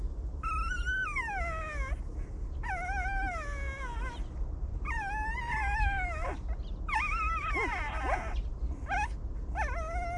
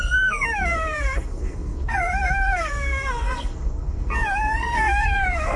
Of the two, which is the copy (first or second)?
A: second